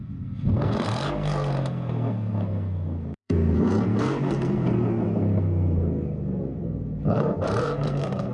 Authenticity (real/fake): fake